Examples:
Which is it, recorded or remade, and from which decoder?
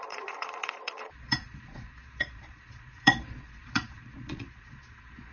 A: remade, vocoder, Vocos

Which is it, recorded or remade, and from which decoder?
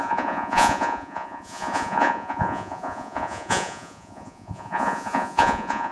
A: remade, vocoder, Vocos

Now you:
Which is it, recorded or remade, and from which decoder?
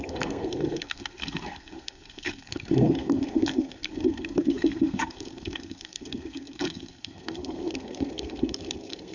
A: remade, codec, SNAC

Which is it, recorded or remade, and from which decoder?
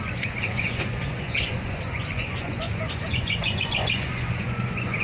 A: remade, vocoder, Vocos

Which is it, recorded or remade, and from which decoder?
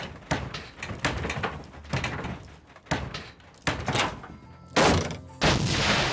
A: recorded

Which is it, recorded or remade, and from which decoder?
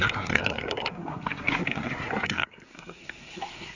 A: remade, codec, SNAC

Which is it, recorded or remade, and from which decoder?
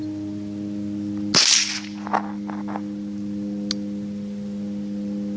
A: recorded